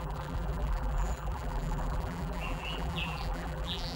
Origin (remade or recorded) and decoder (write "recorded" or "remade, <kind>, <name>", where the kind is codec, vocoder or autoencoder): remade, vocoder, BigVGAN v2